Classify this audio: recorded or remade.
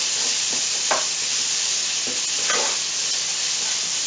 recorded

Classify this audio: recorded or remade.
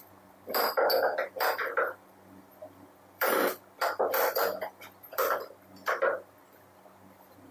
remade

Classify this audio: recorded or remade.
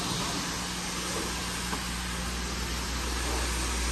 recorded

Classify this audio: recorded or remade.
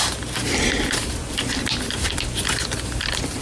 recorded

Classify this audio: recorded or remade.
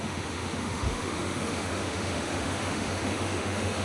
remade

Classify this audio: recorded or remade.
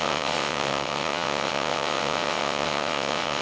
remade